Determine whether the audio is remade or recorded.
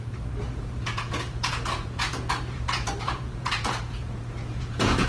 remade